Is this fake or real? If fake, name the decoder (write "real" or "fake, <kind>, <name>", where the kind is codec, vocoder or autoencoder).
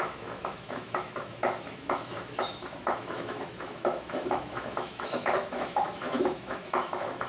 fake, autoencoder, DAC-VAE